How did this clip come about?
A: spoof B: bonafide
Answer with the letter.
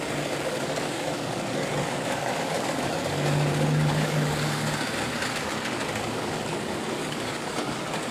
A